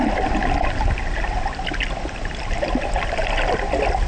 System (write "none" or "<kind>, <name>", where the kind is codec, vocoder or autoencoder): none